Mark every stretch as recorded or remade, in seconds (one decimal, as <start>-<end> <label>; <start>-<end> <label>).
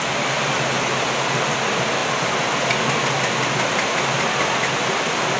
0.0-5.4 recorded